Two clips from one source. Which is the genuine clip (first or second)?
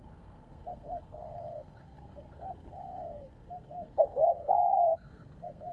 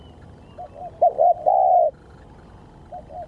second